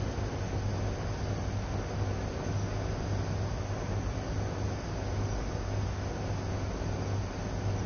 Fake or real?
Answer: real